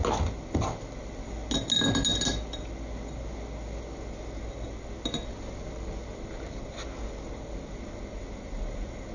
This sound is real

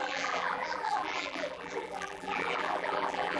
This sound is fake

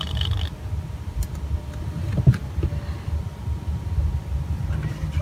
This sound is real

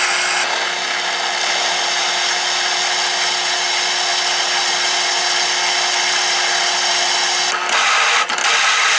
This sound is real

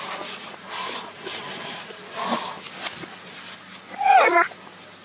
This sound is real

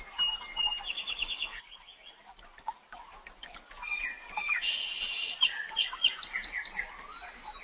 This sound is real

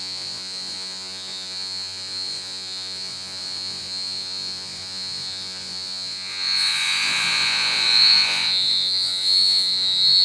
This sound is fake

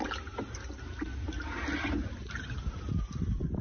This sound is real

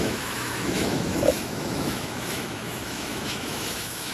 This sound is fake